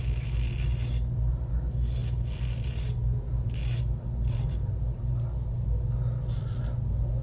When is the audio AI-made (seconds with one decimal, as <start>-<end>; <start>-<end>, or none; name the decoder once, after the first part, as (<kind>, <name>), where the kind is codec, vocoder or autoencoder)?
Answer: none